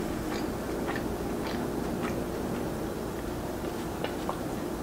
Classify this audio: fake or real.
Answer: real